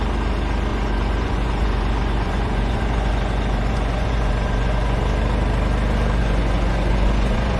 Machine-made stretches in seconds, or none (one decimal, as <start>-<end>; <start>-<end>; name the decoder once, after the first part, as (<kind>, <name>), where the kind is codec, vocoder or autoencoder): 0.7-5.0 (vocoder, Vocos); 6.2-7.6